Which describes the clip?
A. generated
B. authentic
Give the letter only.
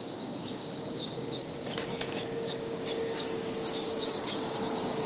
A